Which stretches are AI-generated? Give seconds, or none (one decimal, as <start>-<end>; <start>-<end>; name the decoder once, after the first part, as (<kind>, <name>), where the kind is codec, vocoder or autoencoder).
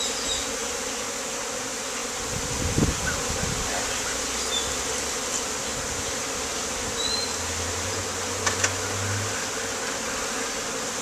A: none